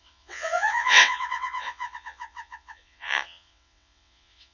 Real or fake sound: fake